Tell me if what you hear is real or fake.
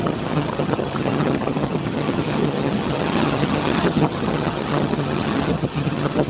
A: fake